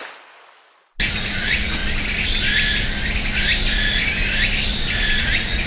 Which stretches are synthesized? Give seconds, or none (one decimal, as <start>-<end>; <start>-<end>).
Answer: 1.1-1.8; 5.2-5.7